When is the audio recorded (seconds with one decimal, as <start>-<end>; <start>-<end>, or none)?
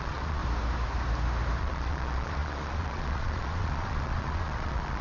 0.4-1.6